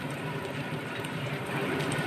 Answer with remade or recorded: remade